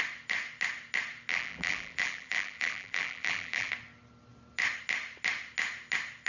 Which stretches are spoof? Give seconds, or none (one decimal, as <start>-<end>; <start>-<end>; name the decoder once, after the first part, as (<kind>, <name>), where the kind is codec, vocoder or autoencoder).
1.3-3.7 (vocoder, BigVGAN v2)